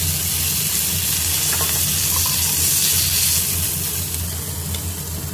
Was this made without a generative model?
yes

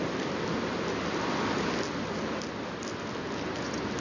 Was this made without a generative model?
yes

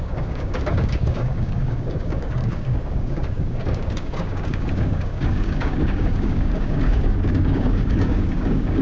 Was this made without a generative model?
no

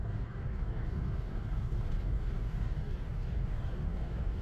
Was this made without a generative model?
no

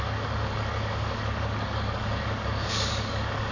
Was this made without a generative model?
no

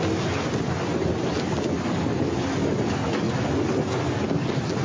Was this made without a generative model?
yes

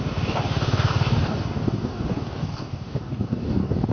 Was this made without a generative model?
no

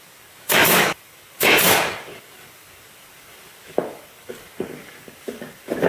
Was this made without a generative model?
no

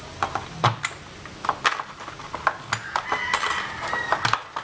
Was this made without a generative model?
yes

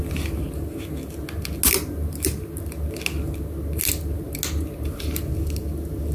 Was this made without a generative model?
yes